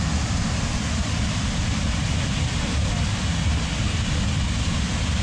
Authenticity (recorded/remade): recorded